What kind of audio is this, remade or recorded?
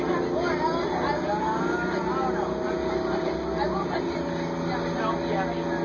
recorded